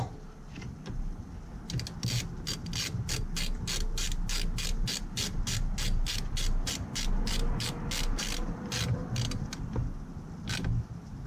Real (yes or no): yes